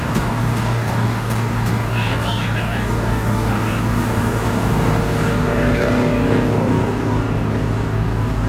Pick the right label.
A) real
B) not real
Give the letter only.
B